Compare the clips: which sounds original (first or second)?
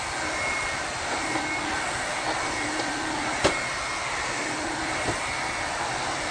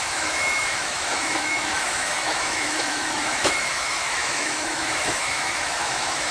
first